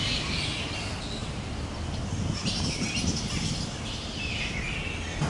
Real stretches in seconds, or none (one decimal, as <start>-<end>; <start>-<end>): 0.0-1.2; 4.4-5.3